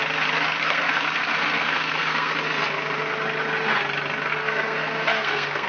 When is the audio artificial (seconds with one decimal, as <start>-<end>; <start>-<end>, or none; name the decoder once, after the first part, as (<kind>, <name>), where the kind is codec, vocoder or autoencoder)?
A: 0.6-2.3 (codec, SNAC); 4.3-5.7